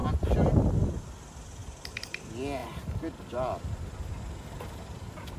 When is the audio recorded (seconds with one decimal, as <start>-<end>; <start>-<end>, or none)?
0.0-1.6; 2.2-2.6; 4.1-5.4